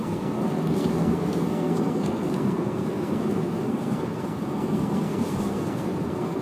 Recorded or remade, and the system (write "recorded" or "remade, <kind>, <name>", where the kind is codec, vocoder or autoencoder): remade, codec, SNAC